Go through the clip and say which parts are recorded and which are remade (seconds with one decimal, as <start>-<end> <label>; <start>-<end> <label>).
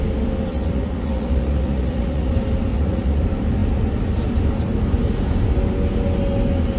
0.0-0.5 recorded; 0.5-2.3 remade; 2.3-2.7 recorded; 2.7-3.2 remade; 3.2-6.8 recorded